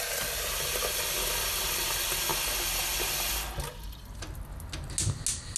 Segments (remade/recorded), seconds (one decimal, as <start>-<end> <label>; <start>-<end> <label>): 0.0-5.6 recorded